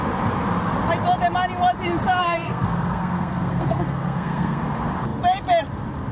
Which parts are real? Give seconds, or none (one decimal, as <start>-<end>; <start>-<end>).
0.0-2.2; 4.6-6.1